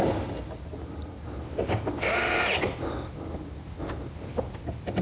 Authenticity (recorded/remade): recorded